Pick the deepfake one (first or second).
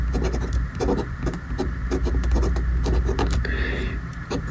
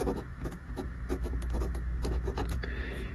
second